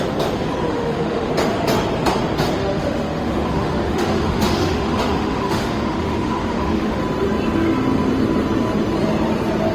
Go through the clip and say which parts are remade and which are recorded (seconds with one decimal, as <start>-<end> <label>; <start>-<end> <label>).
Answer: 0.0-0.7 recorded; 0.7-1.3 remade; 1.3-2.6 recorded; 2.6-7.0 remade; 7.0-9.7 recorded